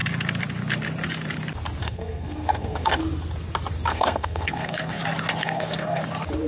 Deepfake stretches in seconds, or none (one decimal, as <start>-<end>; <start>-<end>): 1.8-3.0; 3.9-5.0; 5.4-6.0